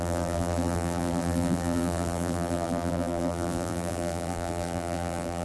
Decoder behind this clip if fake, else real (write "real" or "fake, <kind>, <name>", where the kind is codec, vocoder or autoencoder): fake, vocoder, BigVGAN v2